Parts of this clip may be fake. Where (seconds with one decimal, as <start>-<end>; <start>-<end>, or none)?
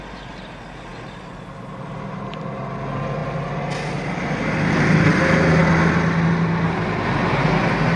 none